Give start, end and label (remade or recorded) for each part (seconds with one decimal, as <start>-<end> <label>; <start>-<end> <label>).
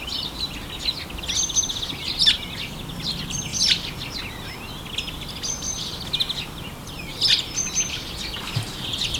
0.0-9.2 recorded